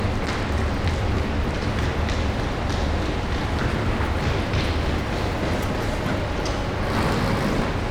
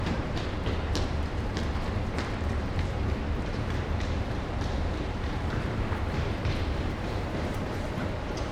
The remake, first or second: second